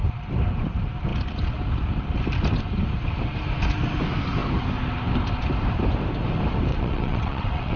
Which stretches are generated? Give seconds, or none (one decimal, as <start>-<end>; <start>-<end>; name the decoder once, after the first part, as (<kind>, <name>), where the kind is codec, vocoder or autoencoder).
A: 6.7-7.8 (vocoder, WaveNeXt)